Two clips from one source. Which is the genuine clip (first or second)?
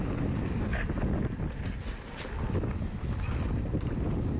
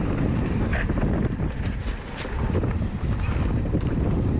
first